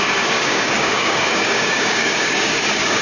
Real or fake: fake